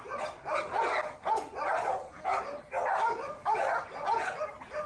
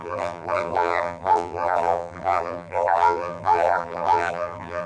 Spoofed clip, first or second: second